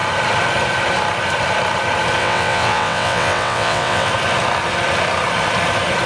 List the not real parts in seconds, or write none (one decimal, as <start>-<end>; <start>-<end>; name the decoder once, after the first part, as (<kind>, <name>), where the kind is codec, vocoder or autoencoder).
2.2-4.1 (vocoder, WaveNeXt)